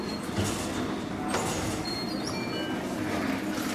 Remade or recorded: recorded